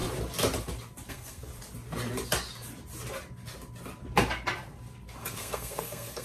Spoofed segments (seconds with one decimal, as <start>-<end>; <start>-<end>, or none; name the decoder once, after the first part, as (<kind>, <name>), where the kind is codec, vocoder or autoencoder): 1.1-1.5 (codec, SNAC); 5.2-6.2